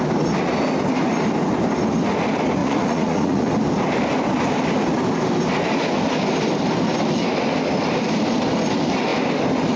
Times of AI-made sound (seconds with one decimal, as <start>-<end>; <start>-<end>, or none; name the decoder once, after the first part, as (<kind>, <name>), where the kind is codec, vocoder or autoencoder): 2.6-3.5 (vocoder, Vocos)